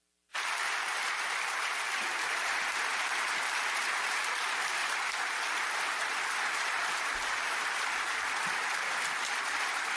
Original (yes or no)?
yes